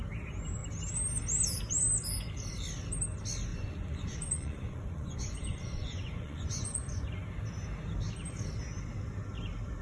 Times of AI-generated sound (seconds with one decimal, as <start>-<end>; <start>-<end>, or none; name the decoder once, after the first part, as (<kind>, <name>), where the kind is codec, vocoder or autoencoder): 3.5-7.1 (vocoder, Vocos)